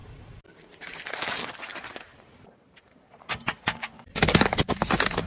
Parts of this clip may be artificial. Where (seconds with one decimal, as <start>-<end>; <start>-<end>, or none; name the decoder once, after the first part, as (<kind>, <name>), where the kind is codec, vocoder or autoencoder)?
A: 0.0-1.1 (vocoder, BigVGAN v2); 1.7-3.6